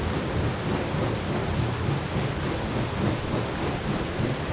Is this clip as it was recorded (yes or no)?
yes